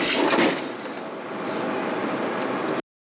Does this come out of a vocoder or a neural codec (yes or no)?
no